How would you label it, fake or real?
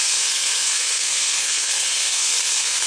fake